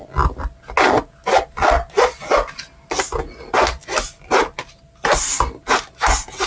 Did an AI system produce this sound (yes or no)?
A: no